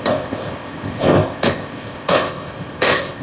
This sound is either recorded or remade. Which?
remade